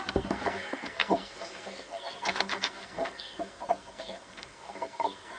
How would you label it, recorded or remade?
remade